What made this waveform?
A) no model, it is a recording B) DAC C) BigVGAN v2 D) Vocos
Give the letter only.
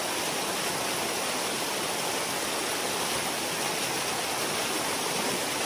A